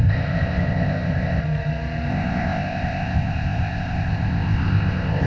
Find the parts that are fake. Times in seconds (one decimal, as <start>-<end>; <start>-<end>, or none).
0.0-1.4; 2.1-5.3